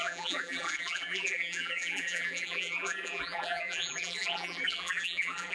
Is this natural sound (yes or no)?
no